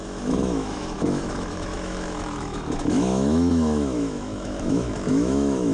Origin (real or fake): fake